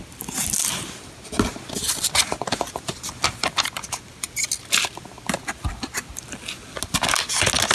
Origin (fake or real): real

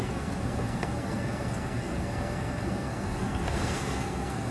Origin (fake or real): fake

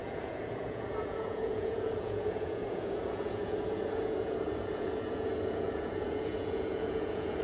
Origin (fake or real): fake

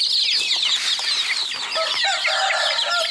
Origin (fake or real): real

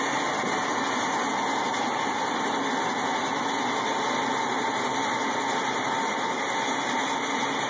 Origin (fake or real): real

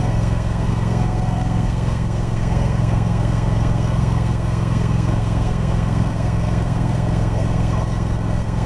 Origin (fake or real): fake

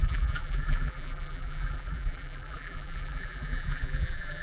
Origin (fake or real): fake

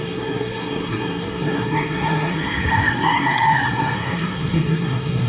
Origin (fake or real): fake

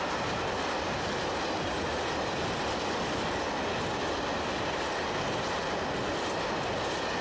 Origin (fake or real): real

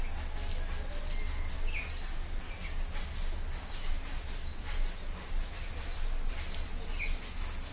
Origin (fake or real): real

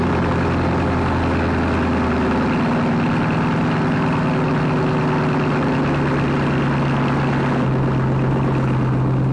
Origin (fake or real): real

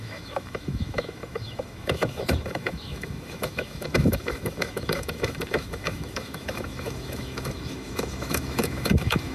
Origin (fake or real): fake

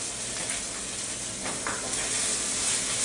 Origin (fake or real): real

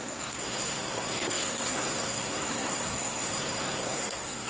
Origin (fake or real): fake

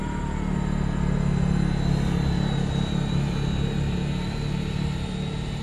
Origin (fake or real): real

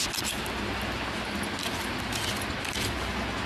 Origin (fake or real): real